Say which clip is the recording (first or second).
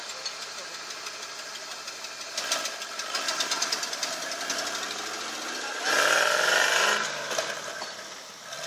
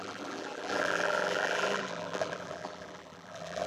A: first